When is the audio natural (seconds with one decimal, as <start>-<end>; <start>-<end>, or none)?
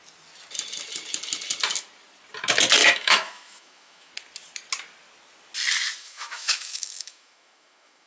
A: 0.0-2.8; 4.1-6.0